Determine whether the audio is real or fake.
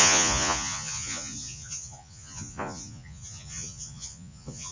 fake